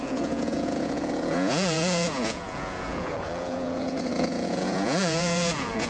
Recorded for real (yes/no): no